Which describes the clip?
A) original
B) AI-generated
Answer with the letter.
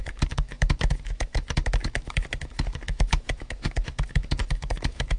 B